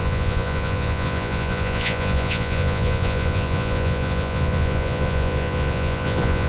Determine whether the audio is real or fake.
fake